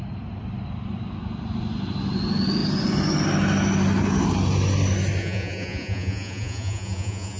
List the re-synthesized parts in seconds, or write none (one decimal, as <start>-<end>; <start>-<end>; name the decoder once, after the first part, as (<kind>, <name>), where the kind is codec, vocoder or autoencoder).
5.2-7.4 (vocoder, Vocos)